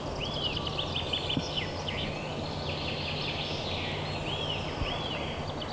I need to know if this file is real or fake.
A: real